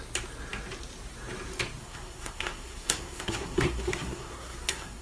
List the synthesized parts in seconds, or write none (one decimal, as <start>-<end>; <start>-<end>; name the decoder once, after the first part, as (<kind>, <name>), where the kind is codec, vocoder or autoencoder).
1.8-5.0 (codec, SNAC)